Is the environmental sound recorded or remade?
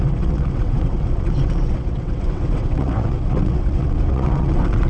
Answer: remade